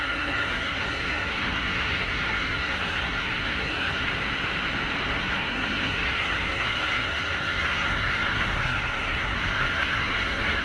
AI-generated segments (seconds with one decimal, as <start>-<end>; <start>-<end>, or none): 0.0-4.1; 5.2-10.6